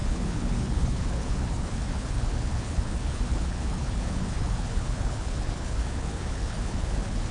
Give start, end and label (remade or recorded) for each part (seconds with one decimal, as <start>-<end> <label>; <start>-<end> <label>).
0.0-7.3 remade